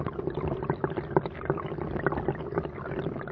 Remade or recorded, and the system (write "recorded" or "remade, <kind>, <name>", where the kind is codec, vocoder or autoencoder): recorded